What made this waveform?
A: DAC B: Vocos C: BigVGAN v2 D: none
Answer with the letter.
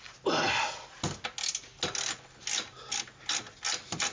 D